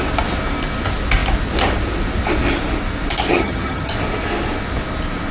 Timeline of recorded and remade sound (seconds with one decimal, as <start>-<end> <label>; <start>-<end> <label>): 0.0-3.3 recorded; 3.3-3.9 remade; 3.9-5.3 recorded